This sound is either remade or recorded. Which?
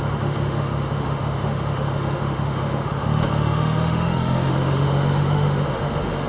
remade